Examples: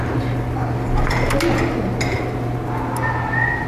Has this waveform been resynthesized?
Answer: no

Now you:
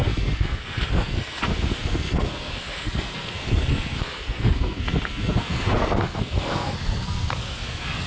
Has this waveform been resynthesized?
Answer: yes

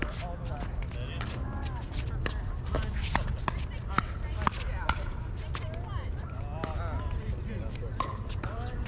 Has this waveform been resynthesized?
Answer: no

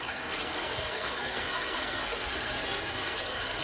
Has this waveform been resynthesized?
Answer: yes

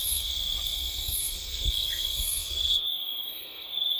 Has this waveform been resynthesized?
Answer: yes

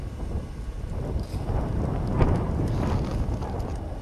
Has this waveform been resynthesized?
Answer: no